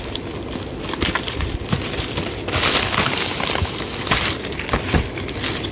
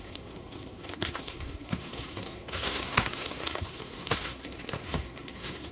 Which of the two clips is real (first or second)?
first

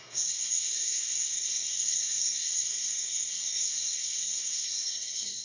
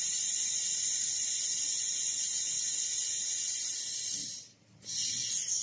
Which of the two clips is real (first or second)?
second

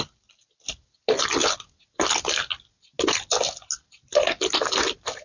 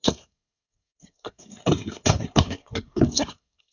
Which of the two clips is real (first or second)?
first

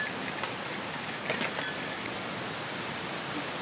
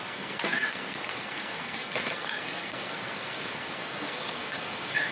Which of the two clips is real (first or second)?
first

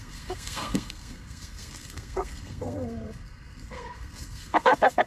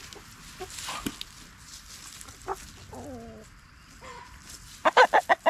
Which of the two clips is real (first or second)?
second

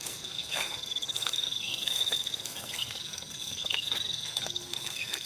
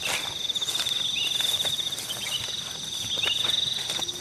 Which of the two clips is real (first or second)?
second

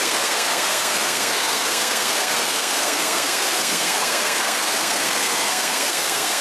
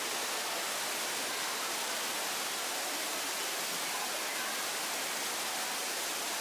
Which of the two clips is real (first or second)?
second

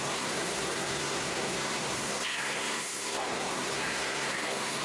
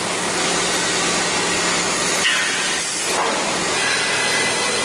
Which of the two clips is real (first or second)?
second